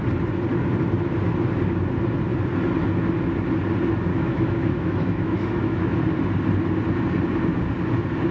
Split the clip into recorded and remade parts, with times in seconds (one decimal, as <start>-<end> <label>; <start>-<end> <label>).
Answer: 0.0-4.1 recorded; 4.1-6.0 remade; 6.0-8.3 recorded